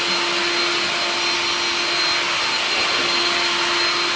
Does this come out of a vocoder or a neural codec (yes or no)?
no